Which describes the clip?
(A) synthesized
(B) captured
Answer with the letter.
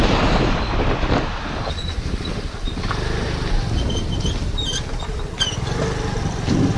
B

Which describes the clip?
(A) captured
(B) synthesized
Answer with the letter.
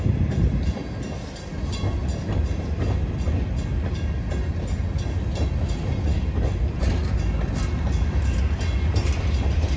A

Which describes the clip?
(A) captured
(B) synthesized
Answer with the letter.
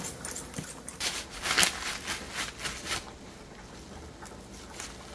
A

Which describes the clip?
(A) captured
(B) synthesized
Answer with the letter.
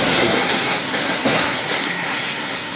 B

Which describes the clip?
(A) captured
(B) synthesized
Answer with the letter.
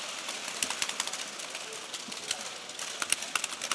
A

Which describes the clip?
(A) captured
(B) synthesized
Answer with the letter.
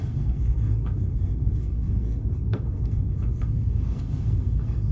B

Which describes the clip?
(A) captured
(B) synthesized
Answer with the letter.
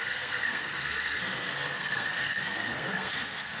B